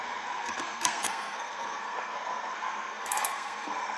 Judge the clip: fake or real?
fake